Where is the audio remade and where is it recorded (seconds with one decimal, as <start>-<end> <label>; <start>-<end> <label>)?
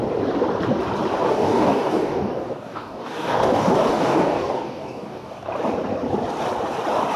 0.0-1.2 recorded; 1.2-5.5 remade; 5.5-7.2 recorded